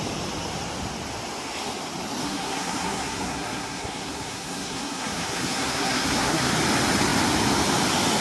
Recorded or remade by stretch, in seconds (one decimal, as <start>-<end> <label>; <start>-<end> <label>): 0.0-2.2 recorded; 2.2-6.5 remade; 6.5-8.2 recorded